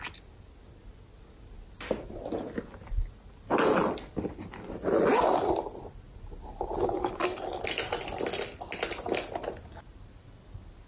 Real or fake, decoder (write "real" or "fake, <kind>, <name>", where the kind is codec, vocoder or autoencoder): real